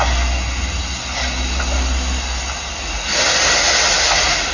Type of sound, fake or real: real